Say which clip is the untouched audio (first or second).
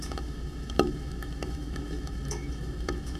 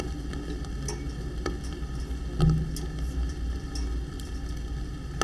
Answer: second